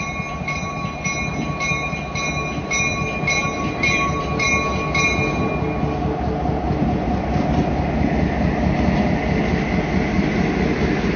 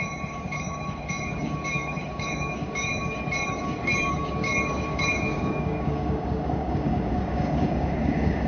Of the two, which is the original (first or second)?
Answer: first